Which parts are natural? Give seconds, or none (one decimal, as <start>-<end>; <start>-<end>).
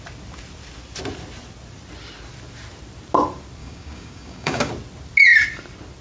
0.0-3.6; 4.7-6.0